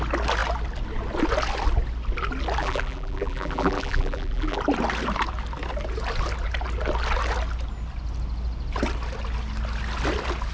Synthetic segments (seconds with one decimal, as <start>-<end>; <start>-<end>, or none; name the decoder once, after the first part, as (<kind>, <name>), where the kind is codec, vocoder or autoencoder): 2.6-4.6 (vocoder, BigVGAN v2)